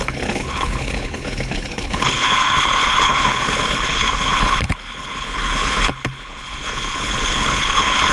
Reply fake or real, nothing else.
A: fake